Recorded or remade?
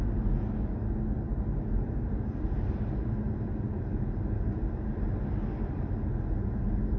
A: recorded